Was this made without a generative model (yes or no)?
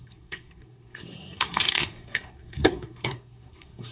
no